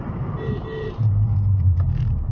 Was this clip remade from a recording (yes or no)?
yes